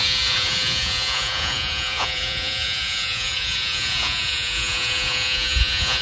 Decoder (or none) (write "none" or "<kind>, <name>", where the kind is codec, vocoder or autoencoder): vocoder, Vocos